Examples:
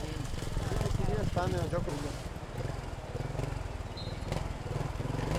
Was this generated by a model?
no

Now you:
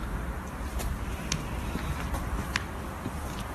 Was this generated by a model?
yes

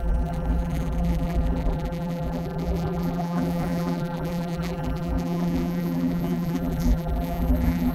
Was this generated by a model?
yes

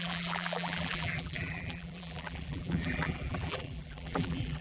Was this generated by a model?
yes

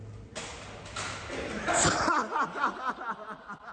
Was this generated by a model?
no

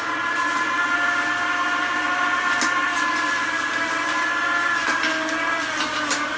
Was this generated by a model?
no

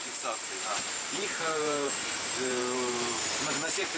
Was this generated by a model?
yes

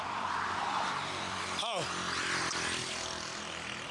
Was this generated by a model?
yes